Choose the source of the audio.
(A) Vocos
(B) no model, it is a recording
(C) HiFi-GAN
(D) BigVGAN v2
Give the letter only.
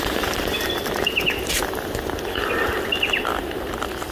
D